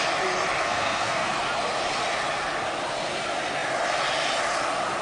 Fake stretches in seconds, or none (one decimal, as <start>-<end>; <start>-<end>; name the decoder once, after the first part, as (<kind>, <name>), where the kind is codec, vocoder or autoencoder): 0.6-1.3 (codec, SNAC)